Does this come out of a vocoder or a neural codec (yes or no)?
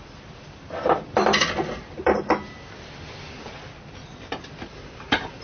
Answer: no